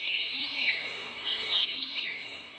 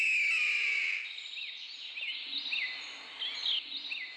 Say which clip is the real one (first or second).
second